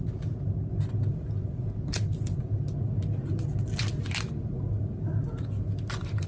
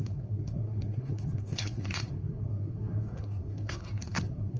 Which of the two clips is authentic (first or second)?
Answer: first